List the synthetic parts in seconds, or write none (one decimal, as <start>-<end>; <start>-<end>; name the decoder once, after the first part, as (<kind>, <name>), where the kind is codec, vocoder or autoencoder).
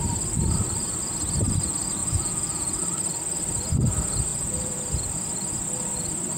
2.0-2.8 (vocoder, Vocos); 4.3-4.8